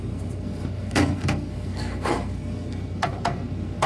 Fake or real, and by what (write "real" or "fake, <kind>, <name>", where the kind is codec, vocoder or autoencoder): fake, codec, SNAC